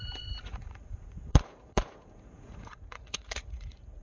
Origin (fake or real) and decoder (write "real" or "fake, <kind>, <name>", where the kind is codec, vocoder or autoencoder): fake, vocoder, Vocos